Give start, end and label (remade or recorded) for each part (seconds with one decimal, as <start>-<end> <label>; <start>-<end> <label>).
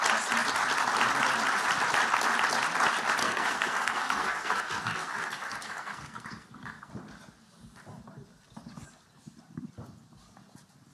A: 0.0-3.2 recorded; 3.2-6.9 remade; 6.9-10.9 recorded